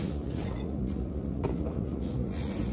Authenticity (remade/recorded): remade